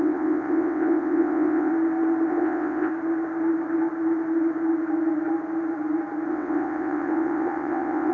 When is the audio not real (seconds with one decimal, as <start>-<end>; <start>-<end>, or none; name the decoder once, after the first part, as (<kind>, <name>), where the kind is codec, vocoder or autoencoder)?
0.0-1.7 (vocoder, WaveNeXt); 2.3-2.9; 6.3-8.1